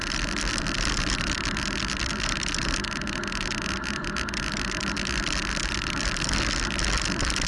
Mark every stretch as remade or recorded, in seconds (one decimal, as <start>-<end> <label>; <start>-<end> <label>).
0.0-7.5 recorded